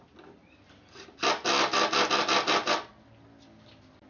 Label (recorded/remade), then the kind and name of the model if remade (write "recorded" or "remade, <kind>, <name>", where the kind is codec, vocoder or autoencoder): recorded